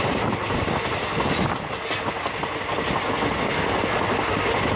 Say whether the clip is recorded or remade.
recorded